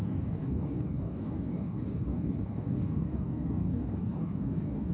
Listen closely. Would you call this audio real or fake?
fake